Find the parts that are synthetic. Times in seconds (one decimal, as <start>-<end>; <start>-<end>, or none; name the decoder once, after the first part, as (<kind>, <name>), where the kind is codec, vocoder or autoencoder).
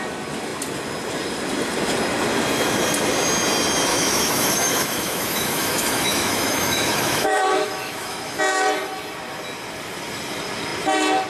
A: 3.9-8.4 (autoencoder, DAC-VAE)